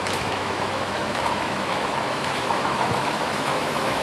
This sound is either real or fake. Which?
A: fake